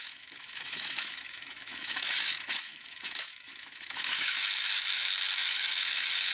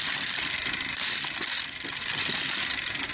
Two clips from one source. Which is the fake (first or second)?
first